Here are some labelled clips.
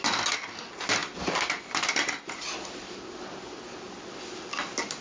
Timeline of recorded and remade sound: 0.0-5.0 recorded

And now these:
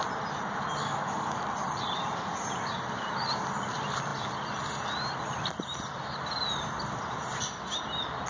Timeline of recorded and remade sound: 0.0-0.8 recorded; 0.8-1.4 remade; 1.4-8.3 recorded

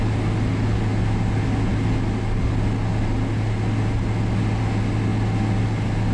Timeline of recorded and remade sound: 0.0-6.1 recorded

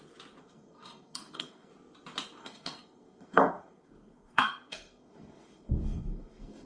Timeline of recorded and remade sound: 0.0-0.4 recorded; 0.4-1.7 remade; 1.7-2.4 recorded; 2.4-6.7 remade

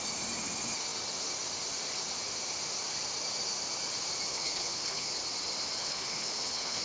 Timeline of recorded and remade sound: 0.0-4.3 recorded; 4.3-5.1 remade; 5.1-5.8 recorded; 5.8-6.8 remade